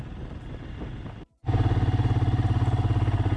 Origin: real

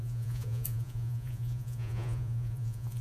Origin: fake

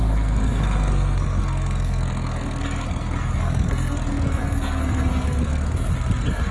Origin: fake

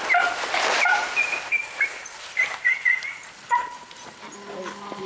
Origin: real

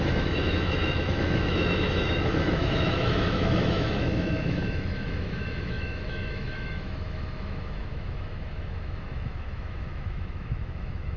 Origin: fake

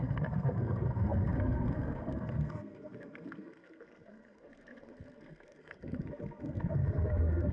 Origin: fake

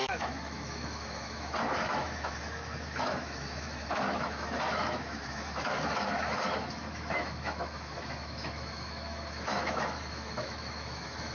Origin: fake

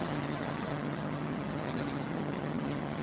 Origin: fake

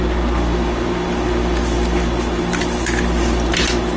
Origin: real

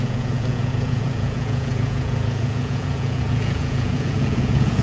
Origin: fake